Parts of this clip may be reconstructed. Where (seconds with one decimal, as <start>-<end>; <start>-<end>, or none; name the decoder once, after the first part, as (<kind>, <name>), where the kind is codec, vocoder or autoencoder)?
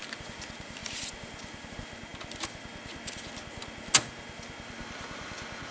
none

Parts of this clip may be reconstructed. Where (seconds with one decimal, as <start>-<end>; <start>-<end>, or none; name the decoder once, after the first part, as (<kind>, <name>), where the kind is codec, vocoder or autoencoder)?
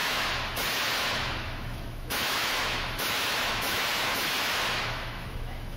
0.0-5.8 (autoencoder, DAC-VAE)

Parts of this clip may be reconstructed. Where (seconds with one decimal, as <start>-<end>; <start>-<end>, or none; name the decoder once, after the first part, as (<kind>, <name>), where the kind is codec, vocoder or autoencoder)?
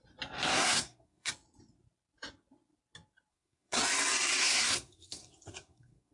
0.5-1.3 (codec, SNAC); 3.3-3.8; 4.4-6.1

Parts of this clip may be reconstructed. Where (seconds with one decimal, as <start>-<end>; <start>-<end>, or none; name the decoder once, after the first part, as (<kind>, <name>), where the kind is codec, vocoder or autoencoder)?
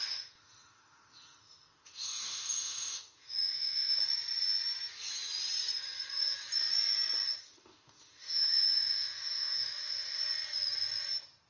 0.0-4.0 (autoencoder, DAC-VAE); 7.4-10.2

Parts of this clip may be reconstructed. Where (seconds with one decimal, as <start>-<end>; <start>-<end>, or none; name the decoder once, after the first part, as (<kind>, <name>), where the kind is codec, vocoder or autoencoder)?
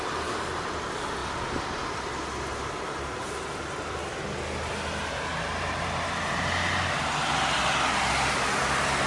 none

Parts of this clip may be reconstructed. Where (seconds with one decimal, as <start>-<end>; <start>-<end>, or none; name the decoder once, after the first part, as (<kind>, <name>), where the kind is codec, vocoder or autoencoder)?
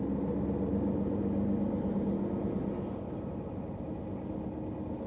none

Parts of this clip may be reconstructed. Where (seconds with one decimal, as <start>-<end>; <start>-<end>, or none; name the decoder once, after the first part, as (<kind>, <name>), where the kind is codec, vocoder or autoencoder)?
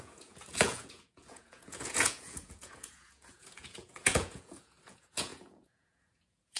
0.0-6.6 (vocoder, Vocos)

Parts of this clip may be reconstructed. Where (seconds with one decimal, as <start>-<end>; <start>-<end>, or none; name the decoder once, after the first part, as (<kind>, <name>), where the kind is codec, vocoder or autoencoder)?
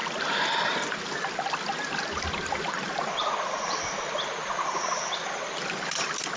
none